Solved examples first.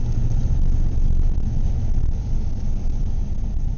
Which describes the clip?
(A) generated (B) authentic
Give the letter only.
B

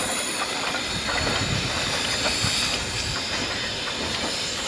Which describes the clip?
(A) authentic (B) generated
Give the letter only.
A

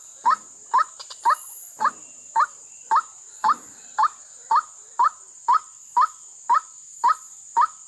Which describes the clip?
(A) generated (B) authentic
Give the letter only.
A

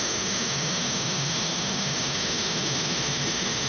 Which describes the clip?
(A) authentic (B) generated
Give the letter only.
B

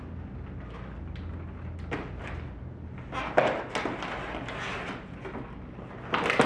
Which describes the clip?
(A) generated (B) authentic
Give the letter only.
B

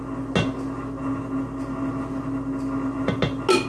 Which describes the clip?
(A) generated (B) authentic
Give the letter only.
B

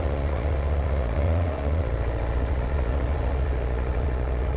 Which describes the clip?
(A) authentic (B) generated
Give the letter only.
B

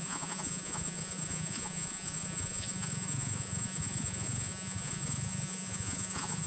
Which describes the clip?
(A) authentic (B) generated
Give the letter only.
B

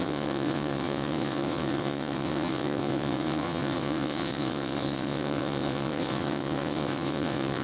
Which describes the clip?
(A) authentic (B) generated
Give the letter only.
B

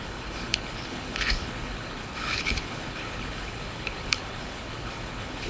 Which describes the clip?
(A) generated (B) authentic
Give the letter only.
A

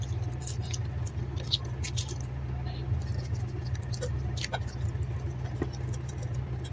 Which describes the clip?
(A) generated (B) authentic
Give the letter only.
B